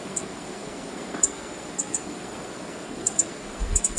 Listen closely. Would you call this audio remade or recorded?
remade